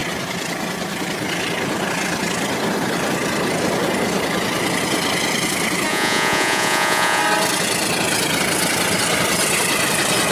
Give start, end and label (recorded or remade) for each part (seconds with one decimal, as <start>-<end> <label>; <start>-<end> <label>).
0.0-5.9 recorded; 5.9-7.2 remade; 7.2-10.3 recorded